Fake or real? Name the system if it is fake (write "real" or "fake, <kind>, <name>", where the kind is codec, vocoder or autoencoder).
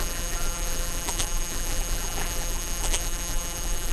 fake, vocoder, BigVGAN v2